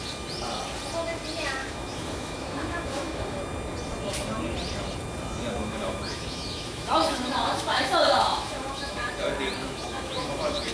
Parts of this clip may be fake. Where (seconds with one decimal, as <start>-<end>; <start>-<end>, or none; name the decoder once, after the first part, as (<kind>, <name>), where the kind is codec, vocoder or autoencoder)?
1.6-3.4 (autoencoder, DAC-VAE); 5.6-9.1; 9.6-10.7